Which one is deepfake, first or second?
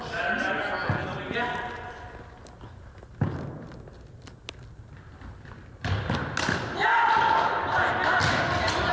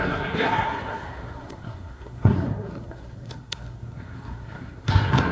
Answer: second